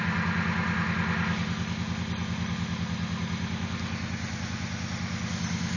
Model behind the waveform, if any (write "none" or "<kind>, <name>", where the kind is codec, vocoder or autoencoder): none